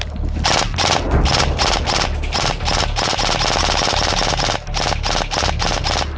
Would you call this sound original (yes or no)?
yes